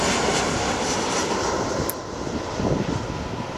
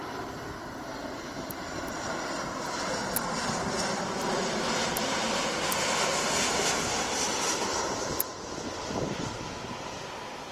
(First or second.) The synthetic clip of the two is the second